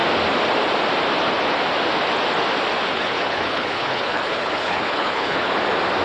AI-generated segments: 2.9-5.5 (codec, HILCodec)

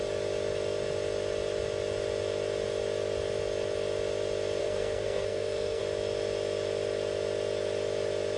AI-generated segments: 4.6-5.8 (codec, SNAC)

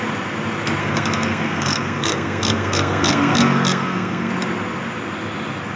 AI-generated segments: 0.8-4.3 (codec, SNAC)

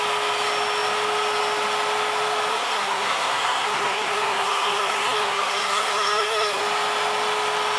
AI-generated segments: 2.5-6.6 (codec, SNAC)

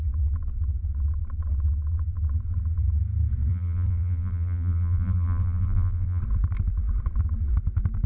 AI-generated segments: 3.5-6.2 (vocoder, BigVGAN v2)